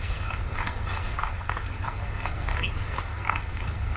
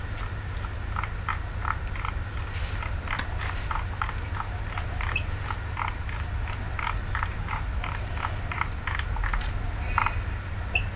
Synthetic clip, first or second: first